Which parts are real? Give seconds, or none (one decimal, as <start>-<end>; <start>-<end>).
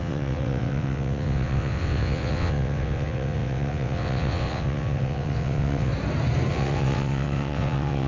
5.9-6.5